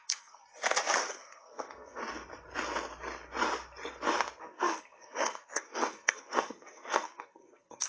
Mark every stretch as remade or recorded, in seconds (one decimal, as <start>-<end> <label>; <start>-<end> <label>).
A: 0.0-0.4 remade; 0.4-1.1 recorded; 1.1-2.0 remade; 2.0-4.4 recorded; 4.4-7.9 remade